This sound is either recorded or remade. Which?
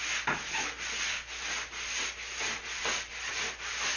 recorded